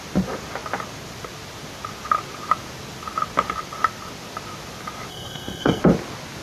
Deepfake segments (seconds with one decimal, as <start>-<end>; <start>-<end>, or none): 5.1-5.8